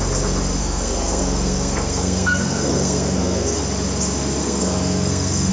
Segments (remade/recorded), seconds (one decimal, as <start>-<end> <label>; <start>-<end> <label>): 0.0-0.6 recorded; 0.6-3.6 remade; 3.6-4.4 recorded; 4.4-5.5 remade